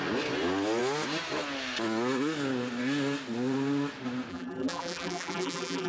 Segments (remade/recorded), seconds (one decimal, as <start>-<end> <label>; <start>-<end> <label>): 0.0-4.3 recorded; 4.3-5.9 remade